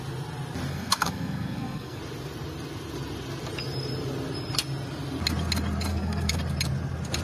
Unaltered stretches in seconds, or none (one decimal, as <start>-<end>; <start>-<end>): 0.0-0.7; 2.0-5.9; 6.4-7.2